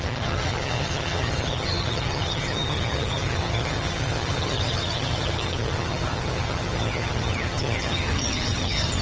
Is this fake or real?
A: fake